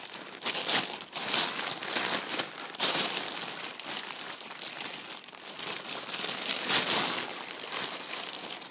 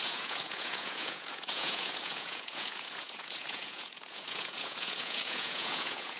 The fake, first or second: second